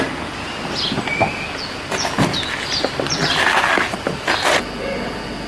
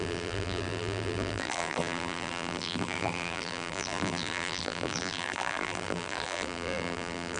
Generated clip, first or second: second